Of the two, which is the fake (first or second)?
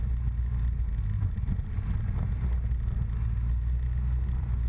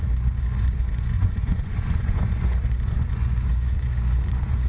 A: second